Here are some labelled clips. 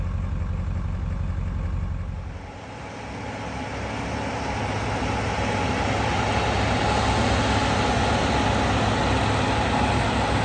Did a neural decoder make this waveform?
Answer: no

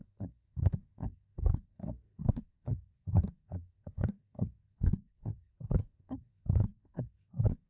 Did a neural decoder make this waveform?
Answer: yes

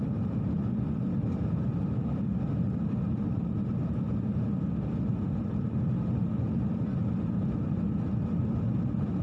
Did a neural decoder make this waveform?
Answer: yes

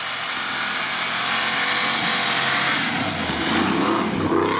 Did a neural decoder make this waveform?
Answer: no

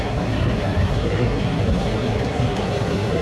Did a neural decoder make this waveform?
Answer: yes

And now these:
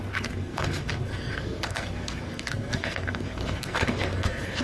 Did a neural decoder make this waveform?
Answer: yes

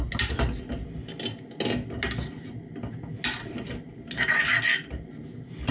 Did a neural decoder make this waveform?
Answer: no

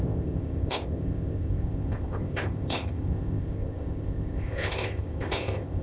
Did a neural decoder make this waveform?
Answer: yes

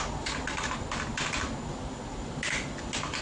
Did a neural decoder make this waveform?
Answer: no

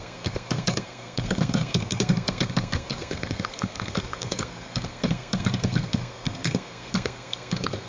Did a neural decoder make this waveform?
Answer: yes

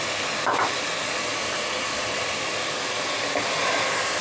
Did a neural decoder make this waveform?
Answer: no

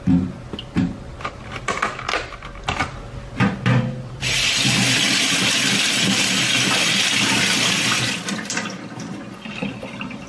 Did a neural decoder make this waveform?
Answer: no